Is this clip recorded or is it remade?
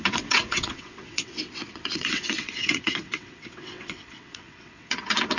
remade